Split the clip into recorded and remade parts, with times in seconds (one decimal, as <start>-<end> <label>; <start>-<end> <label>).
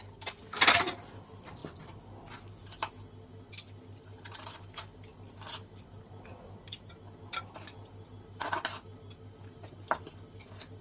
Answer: 0.0-10.8 recorded